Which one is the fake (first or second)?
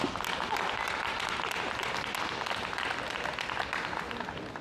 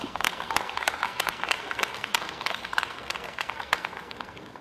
second